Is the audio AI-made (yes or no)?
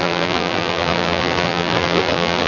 yes